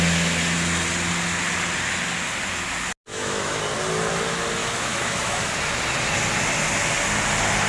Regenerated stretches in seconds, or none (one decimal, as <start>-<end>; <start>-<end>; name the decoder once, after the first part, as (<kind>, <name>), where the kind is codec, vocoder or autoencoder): 3.1-3.6 (autoencoder, DAC-VAE); 4.6-5.5